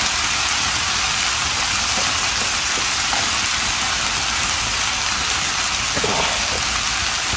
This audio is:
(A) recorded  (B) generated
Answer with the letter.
A